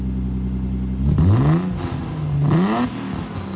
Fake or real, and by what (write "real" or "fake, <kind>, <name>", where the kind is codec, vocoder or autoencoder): real